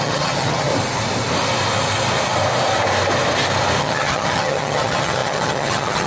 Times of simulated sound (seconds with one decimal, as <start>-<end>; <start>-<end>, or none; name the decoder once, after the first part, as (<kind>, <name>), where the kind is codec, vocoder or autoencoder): 0.0-0.7 (vocoder, HiFi-GAN); 3.8-6.1